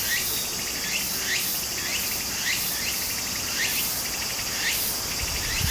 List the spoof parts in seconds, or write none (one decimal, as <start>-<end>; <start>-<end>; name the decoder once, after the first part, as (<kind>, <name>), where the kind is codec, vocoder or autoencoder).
1.9-3.6 (vocoder, BigVGAN v2)